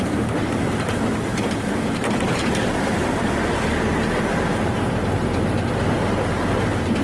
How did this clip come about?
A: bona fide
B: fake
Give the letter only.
B